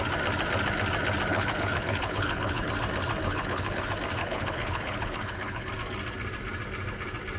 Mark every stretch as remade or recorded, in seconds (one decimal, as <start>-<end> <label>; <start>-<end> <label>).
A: 0.0-1.3 recorded; 1.3-2.7 remade; 2.7-3.2 recorded; 3.2-3.8 remade; 3.8-4.2 recorded; 4.2-5.7 remade; 5.7-7.4 recorded